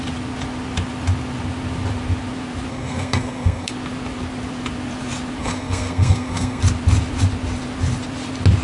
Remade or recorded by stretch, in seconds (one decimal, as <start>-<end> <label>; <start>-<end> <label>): 0.0-2.7 recorded; 2.7-3.7 remade; 3.7-5.4 recorded; 5.4-6.6 remade; 6.6-8.6 recorded